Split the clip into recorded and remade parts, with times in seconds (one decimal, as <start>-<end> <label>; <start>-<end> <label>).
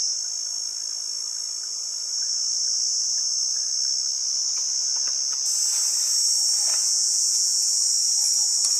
0.0-6.8 recorded; 6.8-7.8 remade; 7.8-8.8 recorded